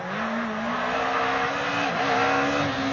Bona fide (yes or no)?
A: yes